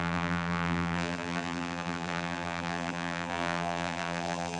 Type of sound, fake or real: fake